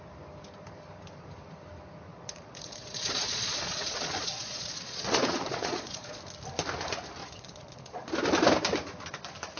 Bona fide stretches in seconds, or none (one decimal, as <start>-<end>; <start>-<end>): 0.0-2.1; 6.2-7.2; 8.1-9.6